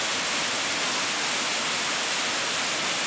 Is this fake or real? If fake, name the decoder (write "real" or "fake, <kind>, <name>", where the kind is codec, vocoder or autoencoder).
real